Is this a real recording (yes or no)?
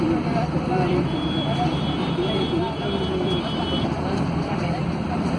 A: no